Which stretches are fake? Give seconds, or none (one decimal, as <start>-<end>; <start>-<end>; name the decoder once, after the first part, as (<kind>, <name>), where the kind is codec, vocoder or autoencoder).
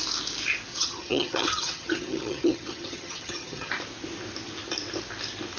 0.7-3.7 (vocoder, HiFi-GAN)